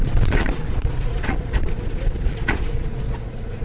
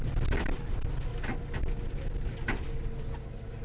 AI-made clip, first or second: first